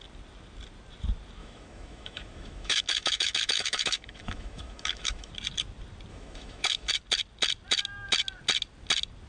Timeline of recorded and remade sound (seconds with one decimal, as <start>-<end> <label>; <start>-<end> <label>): 0.0-1.4 recorded; 1.4-5.3 remade; 5.3-6.1 recorded; 6.1-6.9 remade; 6.9-9.3 recorded